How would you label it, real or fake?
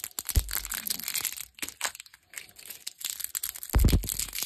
real